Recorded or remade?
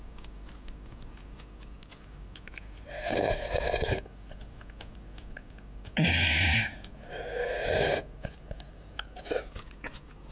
recorded